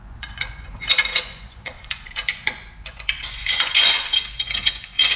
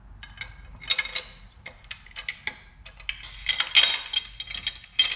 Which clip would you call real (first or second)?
second